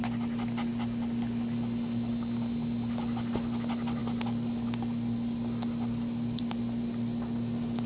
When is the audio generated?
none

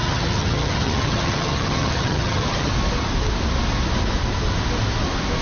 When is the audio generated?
0.0-2.7 (vocoder, HiFi-GAN)

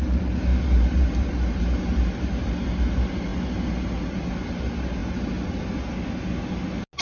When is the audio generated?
none

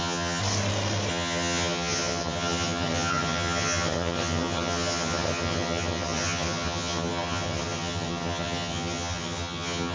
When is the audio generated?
0.0-0.4 (vocoder, HiFi-GAN); 1.1-9.9

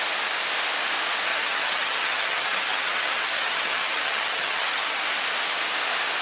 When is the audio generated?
1.3-5.0 (vocoder, HiFi-GAN)

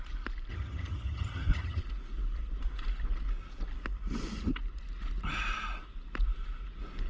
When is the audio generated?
0.5-1.8 (vocoder, HiFi-GAN)